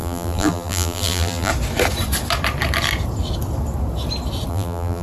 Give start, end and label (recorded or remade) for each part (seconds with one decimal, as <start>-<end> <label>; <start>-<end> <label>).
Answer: 0.0-1.5 remade; 1.5-4.5 recorded; 4.5-5.0 remade